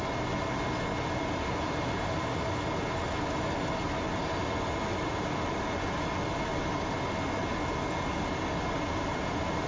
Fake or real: real